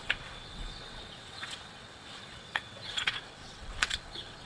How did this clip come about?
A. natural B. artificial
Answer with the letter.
B